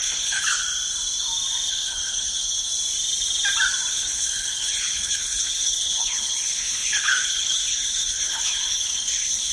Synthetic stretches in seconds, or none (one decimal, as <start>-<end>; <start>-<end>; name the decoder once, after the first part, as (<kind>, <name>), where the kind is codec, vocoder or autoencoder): 0.0-0.6 (codec, HILCodec); 1.7-2.7; 3.9-9.5